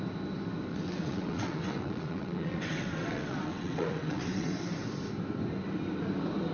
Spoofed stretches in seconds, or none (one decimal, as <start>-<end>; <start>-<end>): 0.7-4.5